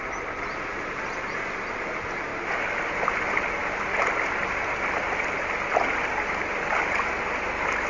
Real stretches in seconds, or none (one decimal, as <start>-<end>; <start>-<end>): 0.0-7.9